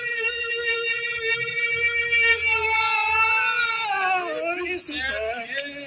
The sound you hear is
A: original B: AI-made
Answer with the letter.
A